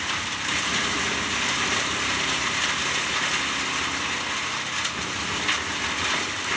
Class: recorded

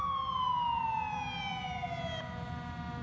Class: recorded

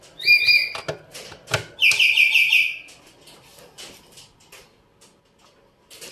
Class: recorded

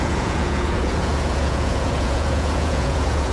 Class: remade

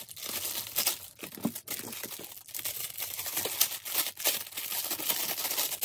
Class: recorded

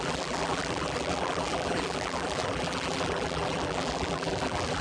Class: remade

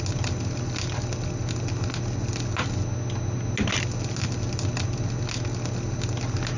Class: recorded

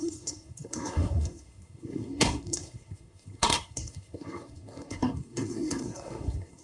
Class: remade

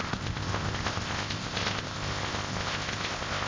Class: remade